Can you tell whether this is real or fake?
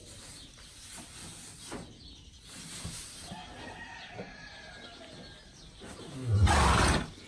real